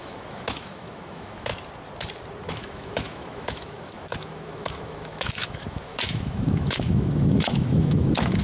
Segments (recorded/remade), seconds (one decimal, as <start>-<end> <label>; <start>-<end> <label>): 0.0-1.5 remade; 1.5-2.5 recorded; 2.5-8.4 remade